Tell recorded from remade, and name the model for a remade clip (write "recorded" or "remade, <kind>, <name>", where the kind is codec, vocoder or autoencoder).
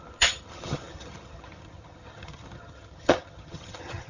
remade, vocoder, HiFi-GAN